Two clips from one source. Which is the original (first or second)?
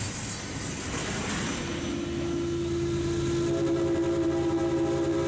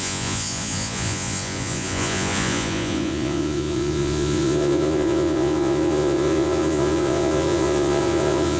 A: first